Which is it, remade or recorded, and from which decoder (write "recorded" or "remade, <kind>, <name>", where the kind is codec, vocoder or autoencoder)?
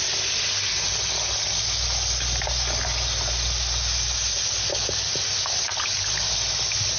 recorded